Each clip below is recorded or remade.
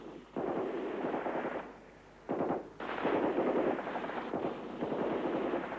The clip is recorded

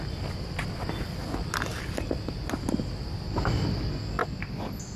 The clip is recorded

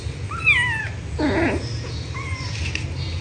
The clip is recorded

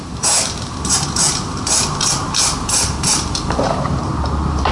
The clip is remade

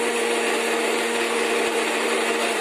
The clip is recorded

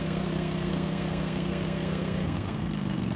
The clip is remade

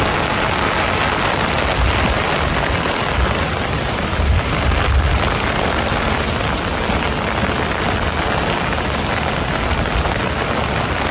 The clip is recorded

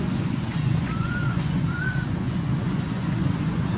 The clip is remade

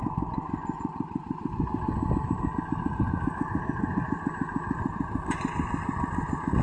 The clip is remade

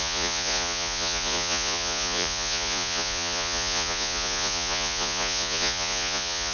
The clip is remade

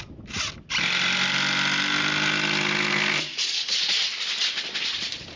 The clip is recorded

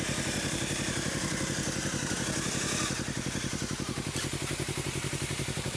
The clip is remade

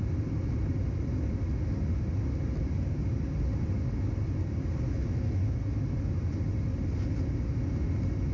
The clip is recorded